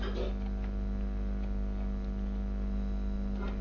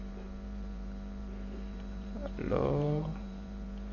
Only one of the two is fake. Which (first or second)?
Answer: second